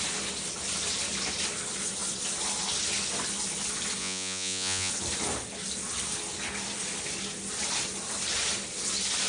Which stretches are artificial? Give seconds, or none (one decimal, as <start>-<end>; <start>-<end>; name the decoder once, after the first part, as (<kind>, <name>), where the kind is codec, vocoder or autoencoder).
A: 4.0-4.9 (vocoder, Vocos)